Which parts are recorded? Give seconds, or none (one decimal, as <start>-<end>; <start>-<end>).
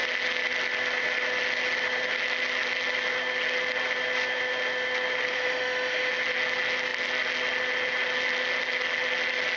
0.0-5.3; 6.1-9.6